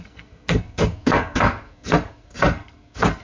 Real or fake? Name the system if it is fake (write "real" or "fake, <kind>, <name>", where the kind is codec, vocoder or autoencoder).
fake, codec, SNAC